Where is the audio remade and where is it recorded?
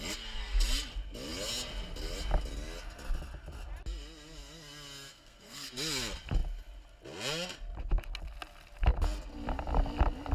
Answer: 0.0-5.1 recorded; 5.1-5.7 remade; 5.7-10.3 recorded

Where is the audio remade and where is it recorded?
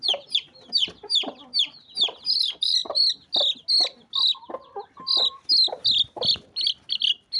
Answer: 0.0-7.4 recorded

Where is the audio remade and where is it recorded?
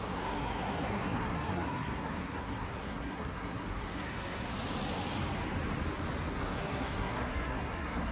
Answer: 0.0-4.5 remade; 4.5-6.3 recorded; 6.3-8.1 remade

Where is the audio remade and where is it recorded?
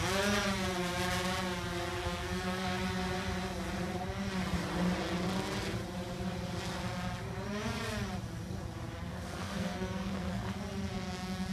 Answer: 0.0-2.0 recorded; 2.0-2.8 remade; 2.8-9.1 recorded; 9.1-10.6 remade; 10.6-11.5 recorded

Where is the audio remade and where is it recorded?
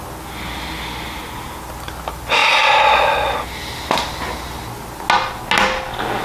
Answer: 0.0-6.2 recorded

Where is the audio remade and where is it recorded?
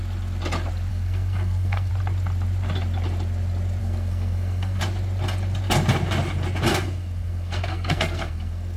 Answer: 0.0-0.9 recorded; 0.9-1.9 remade; 1.9-3.8 recorded; 3.8-4.8 remade; 4.8-6.7 recorded; 6.7-8.8 remade